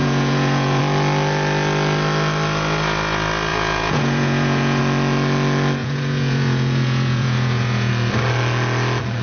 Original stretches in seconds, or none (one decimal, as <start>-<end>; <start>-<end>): 0.8-3.5; 4.8-5.8; 7.9-9.2